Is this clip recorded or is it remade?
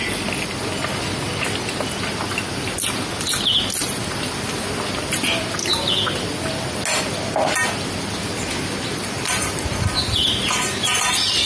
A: recorded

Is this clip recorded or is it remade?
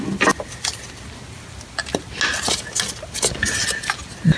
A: recorded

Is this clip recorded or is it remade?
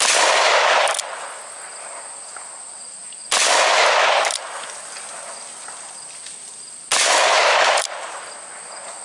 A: recorded